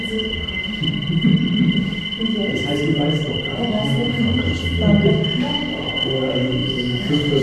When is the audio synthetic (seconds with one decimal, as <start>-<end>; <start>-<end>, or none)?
none